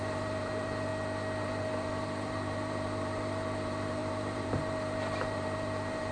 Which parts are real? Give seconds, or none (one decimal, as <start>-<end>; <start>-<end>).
0.9-1.4